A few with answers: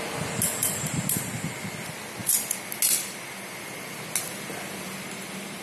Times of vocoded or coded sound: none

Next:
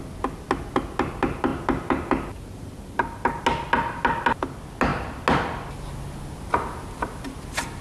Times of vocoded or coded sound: none